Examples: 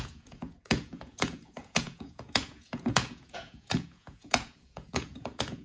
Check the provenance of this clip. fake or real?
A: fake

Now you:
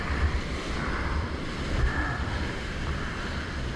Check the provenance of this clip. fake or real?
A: real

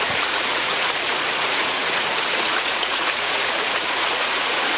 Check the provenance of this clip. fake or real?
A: fake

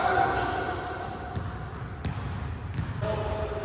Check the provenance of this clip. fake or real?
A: real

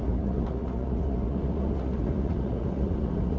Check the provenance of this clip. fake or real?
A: fake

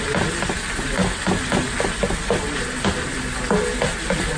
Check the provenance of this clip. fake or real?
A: real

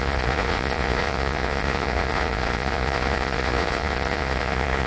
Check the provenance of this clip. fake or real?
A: fake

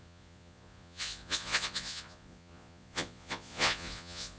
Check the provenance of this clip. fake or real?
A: fake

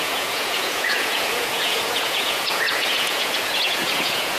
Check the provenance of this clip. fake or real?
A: fake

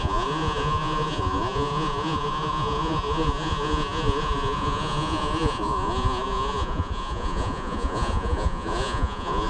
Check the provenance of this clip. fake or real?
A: fake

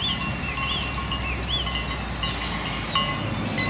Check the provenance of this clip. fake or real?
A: real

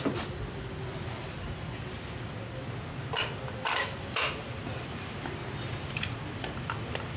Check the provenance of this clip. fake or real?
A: real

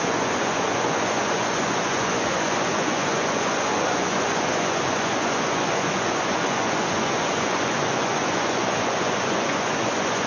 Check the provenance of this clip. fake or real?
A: fake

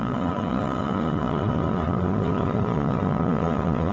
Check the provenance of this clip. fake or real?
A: fake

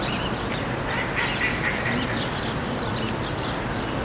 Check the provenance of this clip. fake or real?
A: real